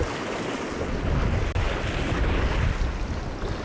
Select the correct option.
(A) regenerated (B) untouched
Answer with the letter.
B